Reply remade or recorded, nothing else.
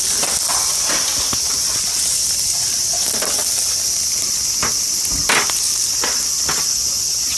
recorded